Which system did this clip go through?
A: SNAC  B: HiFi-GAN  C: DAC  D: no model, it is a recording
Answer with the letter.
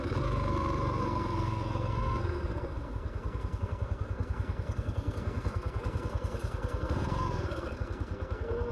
A